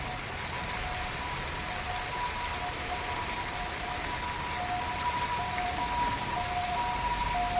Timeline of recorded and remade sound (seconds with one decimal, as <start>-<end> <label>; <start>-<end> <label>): 0.0-5.0 recorded; 5.0-5.8 remade; 5.8-7.6 recorded